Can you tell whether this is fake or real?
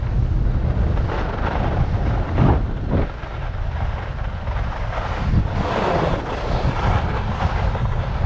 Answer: real